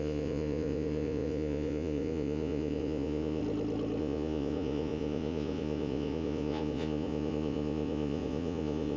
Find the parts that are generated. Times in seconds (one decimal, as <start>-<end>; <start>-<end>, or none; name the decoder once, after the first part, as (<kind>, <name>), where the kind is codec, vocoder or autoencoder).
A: 0.0-3.4 (vocoder, Vocos); 4.0-9.0